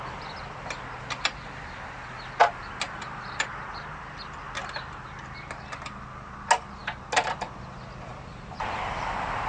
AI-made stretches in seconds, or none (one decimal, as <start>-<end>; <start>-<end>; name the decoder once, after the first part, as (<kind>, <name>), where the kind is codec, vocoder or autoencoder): 2.4-3.4 (vocoder, BigVGAN v2); 8.1-8.8